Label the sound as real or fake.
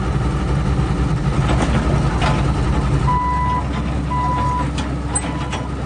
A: real